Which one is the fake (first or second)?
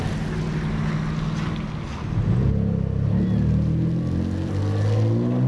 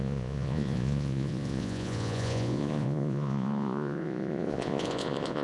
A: second